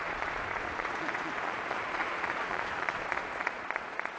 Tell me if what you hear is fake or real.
fake